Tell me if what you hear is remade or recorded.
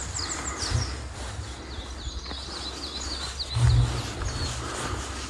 recorded